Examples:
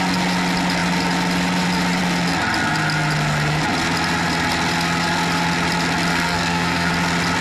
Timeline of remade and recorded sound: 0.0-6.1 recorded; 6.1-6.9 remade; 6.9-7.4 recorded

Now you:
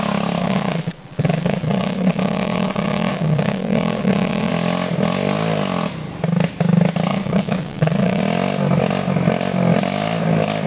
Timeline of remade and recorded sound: 0.0-0.4 recorded; 0.4-4.5 remade; 4.5-7.1 recorded; 7.1-8.2 remade; 8.2-10.7 recorded

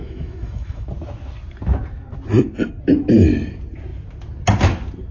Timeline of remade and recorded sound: 0.0-0.9 remade; 0.9-5.1 recorded

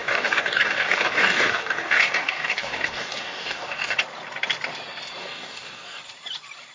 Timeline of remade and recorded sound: 0.0-4.0 remade; 4.0-5.2 recorded; 5.2-6.0 remade; 6.0-6.7 recorded

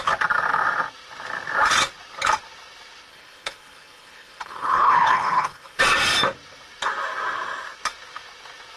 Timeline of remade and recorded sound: 0.0-3.1 recorded; 3.1-5.8 remade; 5.8-8.8 recorded

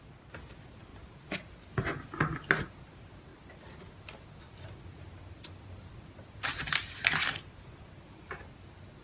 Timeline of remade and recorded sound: 0.0-9.0 recorded

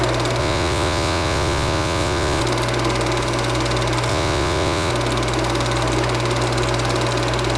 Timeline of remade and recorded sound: 0.0-0.4 recorded; 0.4-2.4 remade; 2.4-4.1 recorded; 4.1-4.9 remade; 4.9-7.6 recorded